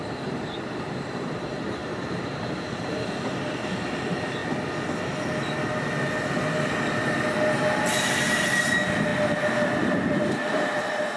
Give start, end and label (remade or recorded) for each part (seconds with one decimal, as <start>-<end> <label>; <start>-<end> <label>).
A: 0.0-4.4 remade; 4.4-7.8 recorded; 7.8-11.2 remade